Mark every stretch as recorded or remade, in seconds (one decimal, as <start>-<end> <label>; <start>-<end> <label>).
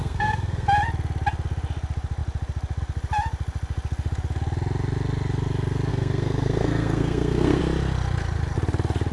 0.0-0.7 remade; 0.7-5.9 recorded; 5.9-7.6 remade; 7.6-9.1 recorded